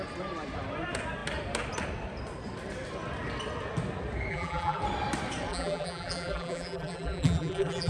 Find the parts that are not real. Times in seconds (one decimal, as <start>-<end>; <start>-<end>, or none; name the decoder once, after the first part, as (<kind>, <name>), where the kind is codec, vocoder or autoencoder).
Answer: 4.3-4.8 (vocoder, BigVGAN v2); 5.5-7.9